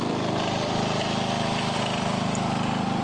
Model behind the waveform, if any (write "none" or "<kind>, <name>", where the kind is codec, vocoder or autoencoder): vocoder, BigVGAN v2